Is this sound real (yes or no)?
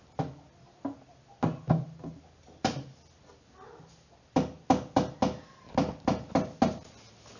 yes